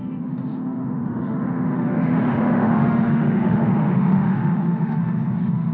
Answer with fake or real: fake